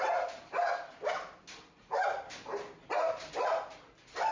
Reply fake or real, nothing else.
real